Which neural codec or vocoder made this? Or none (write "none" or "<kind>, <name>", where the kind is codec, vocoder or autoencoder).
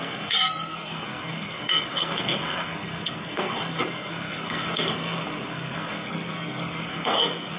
codec, SNAC